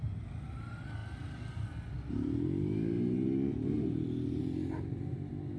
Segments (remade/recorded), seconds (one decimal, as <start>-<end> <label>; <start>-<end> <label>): 0.0-5.6 recorded